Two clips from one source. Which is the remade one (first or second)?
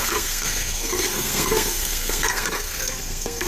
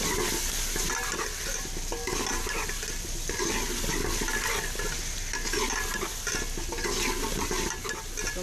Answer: first